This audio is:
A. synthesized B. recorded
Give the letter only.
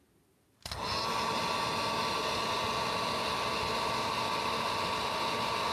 B